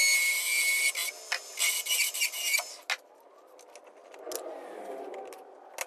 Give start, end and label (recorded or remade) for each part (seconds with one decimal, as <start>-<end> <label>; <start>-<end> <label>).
0.0-5.9 recorded